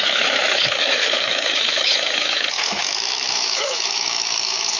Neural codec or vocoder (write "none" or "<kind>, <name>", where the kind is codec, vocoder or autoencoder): autoencoder, DAC-VAE